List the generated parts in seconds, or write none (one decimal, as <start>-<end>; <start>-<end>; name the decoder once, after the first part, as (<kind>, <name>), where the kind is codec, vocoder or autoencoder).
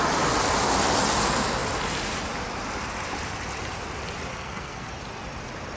4.3-4.9 (codec, SNAC)